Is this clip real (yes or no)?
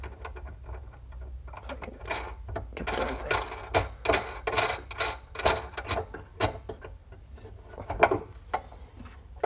yes